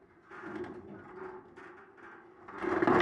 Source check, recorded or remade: recorded